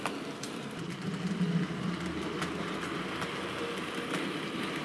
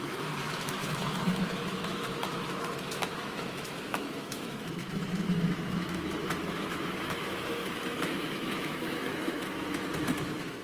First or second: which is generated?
second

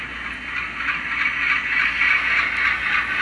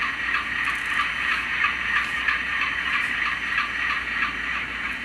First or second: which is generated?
second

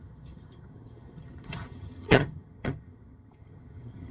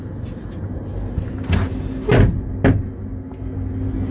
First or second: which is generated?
first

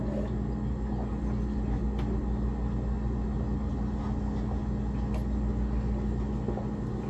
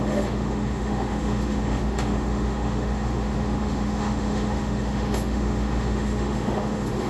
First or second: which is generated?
second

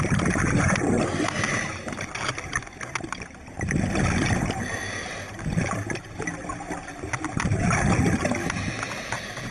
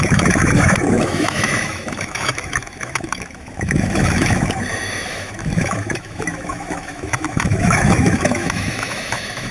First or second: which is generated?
second